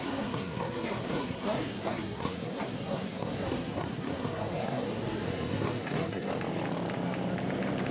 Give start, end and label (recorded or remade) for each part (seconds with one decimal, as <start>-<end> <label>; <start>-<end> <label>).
0.0-6.3 remade; 6.3-7.9 recorded